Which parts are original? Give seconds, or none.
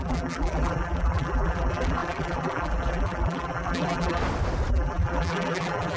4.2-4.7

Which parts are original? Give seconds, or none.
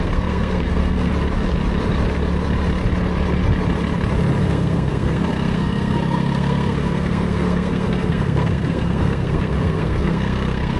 1.1-4.4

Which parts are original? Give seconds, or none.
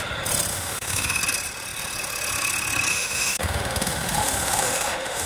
0.0-0.5; 1.2-2.9